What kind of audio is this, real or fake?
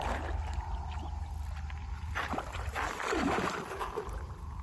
real